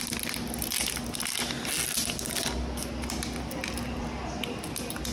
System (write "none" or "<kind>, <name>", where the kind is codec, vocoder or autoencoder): none